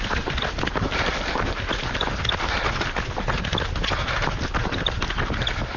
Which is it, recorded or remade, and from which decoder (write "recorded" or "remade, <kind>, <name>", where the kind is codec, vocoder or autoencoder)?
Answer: recorded